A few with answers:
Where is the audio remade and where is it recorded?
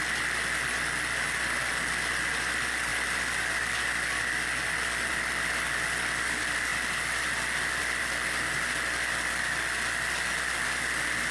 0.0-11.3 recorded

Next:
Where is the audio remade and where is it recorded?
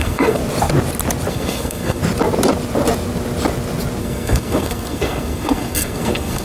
0.0-0.4 remade; 0.4-1.3 recorded; 1.3-2.0 remade; 2.0-4.0 recorded; 4.0-6.4 remade